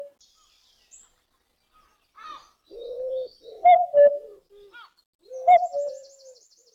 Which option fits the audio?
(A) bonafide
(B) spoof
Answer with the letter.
A